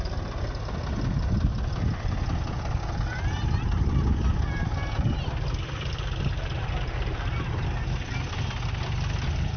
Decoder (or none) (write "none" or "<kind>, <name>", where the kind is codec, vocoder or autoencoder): none